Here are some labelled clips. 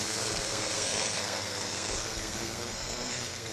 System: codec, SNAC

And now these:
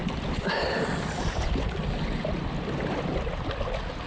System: none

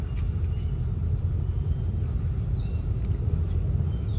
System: none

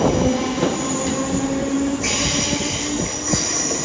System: none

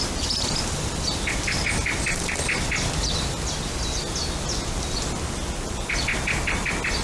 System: none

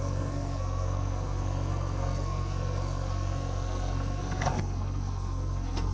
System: codec, SNAC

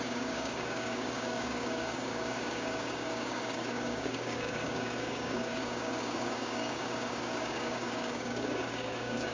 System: codec, DAC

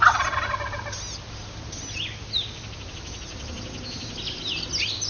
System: none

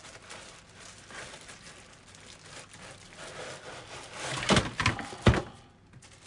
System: none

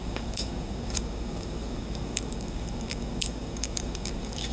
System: codec, DAC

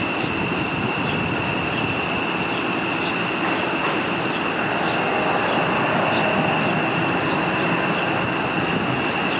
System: none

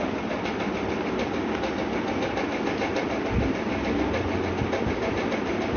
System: none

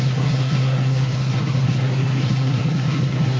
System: codec, SNAC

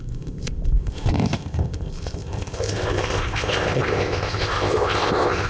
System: codec, ZipCodec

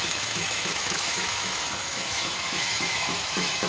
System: autoencoder, DAC-VAE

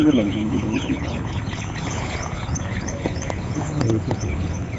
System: codec, HILCodec